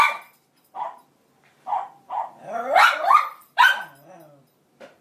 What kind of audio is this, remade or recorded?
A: recorded